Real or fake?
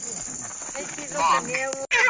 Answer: real